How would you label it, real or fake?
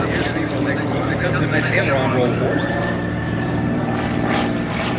fake